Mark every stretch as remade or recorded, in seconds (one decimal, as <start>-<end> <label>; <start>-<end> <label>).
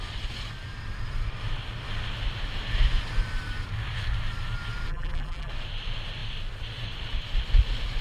0.0-4.9 recorded; 4.9-5.5 remade; 5.5-8.0 recorded